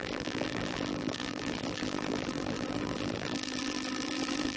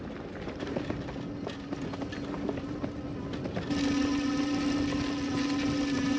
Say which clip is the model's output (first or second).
first